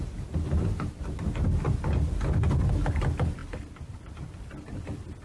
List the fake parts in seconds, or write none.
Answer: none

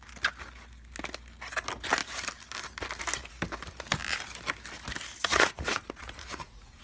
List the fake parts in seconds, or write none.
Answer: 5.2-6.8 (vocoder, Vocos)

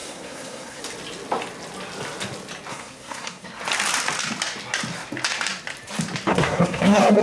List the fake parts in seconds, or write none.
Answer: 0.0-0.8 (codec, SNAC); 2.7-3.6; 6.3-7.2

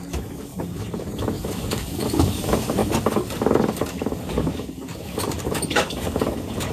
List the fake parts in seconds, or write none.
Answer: 0.0-6.7 (codec, DAC)

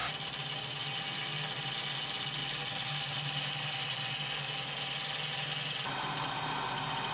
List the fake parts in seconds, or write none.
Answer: none

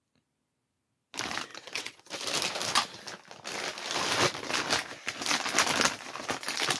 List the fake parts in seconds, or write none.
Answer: 1.5-2.0 (vocoder, WaveNeXt)

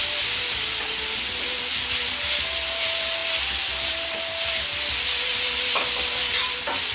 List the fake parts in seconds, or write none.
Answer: none